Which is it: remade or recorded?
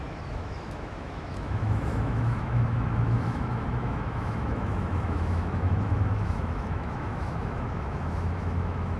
remade